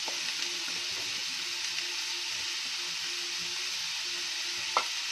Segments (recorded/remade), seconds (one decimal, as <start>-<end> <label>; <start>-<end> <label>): 0.0-5.1 recorded

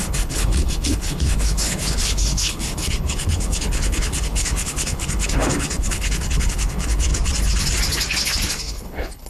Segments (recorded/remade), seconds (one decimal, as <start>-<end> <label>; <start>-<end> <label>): 0.0-7.1 remade; 7.1-8.5 recorded; 8.5-9.3 remade

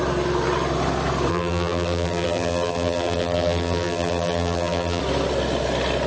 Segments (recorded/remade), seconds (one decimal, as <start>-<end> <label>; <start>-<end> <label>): 0.0-1.3 recorded; 1.3-5.0 remade; 5.0-6.1 recorded

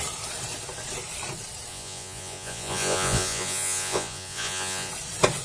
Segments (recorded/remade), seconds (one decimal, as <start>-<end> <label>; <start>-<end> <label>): 0.0-1.7 recorded; 1.7-4.9 remade; 4.9-5.4 recorded

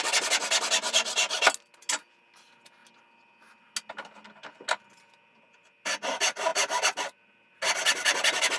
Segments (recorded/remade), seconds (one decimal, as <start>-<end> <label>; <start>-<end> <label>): 0.0-8.6 recorded

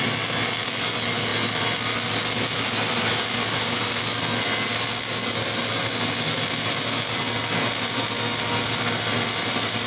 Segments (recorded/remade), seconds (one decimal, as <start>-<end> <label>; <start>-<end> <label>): 0.0-9.9 recorded

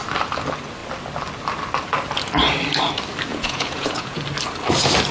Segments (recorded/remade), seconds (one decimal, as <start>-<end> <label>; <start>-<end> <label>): 0.0-3.3 recorded; 3.3-4.2 remade; 4.2-5.1 recorded

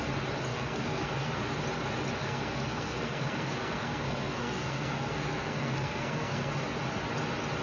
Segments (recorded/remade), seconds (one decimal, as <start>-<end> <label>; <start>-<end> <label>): 0.0-0.5 recorded; 0.5-1.4 remade; 1.4-2.2 recorded; 2.2-6.5 remade; 6.5-7.6 recorded